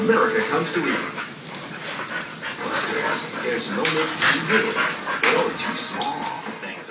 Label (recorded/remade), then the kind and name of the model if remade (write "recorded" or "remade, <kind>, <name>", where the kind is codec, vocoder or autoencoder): recorded